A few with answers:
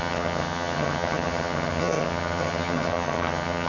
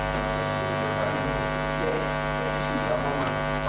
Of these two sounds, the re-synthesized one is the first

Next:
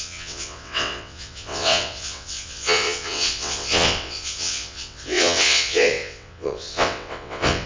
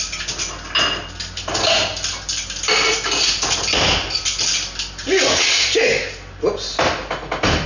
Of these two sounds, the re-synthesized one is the first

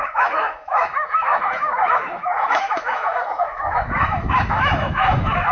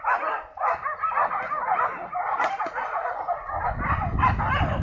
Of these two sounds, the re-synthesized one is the first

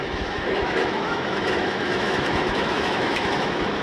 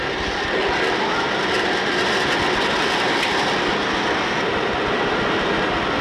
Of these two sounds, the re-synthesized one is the first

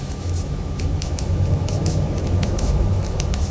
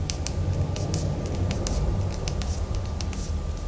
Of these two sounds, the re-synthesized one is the first